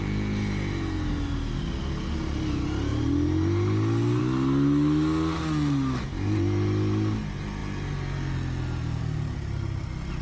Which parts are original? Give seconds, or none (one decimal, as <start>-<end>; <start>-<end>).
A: 0.0-10.2